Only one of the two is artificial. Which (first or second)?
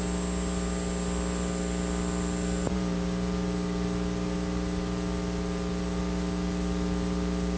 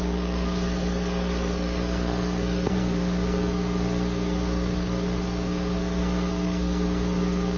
second